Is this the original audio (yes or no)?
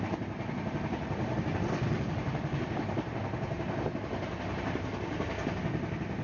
yes